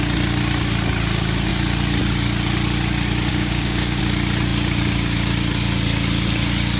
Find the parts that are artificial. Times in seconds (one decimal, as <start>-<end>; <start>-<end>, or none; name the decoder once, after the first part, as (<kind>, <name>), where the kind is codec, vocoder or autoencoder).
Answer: 3.3-4.0 (codec, DAC)